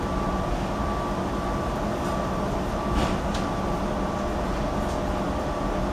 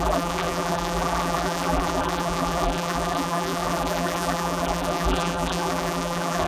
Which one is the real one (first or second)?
first